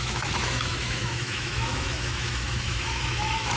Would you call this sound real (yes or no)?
no